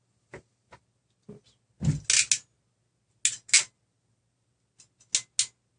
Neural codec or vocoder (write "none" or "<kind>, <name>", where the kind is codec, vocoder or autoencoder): none